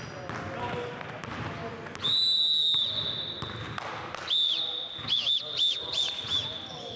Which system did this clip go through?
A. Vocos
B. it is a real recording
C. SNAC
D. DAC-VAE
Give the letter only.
B